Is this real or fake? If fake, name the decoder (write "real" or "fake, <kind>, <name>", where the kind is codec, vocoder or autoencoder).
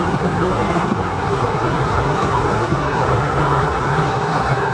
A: fake, codec, SNAC